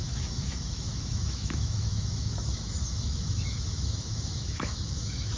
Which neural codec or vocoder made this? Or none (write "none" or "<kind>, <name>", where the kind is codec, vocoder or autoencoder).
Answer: autoencoder, DAC-VAE